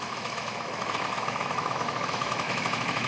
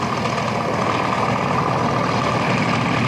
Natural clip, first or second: second